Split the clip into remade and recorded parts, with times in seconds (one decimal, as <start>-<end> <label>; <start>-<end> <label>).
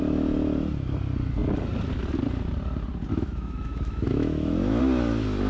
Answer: 0.0-3.1 recorded; 3.1-4.8 remade; 4.8-5.5 recorded